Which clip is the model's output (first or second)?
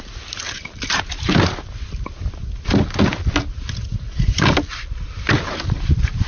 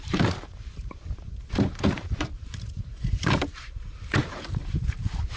second